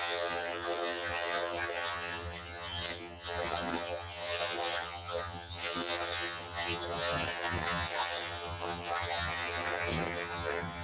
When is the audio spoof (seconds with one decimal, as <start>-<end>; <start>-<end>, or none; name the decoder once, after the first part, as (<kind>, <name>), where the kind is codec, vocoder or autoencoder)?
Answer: 0.0-10.8 (vocoder, HiFi-GAN)